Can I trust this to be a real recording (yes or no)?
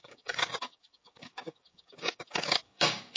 no